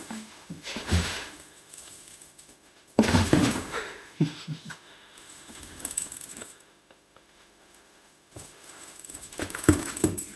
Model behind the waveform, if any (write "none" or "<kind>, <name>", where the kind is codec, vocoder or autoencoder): autoencoder, DAC-VAE